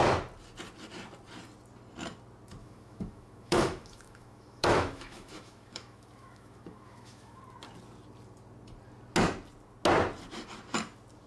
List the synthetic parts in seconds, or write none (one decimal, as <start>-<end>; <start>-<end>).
2.6-7.4